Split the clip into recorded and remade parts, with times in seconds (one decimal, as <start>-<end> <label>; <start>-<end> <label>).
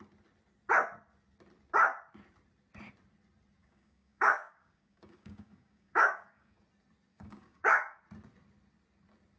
0.0-3.6 recorded; 3.6-6.6 remade; 6.6-7.1 recorded; 7.1-8.0 remade; 8.0-9.4 recorded